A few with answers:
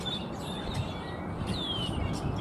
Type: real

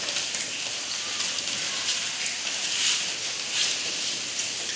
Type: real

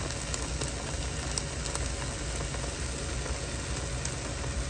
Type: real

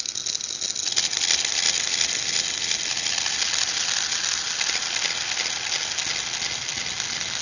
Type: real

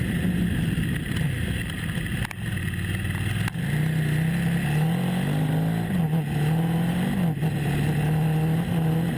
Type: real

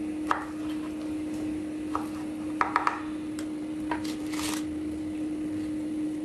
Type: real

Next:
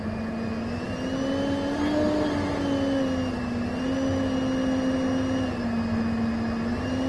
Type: real